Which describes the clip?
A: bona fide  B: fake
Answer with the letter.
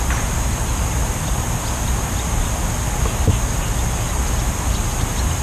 A